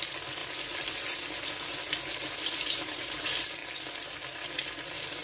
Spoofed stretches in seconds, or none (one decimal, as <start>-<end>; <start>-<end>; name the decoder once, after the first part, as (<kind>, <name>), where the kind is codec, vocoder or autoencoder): none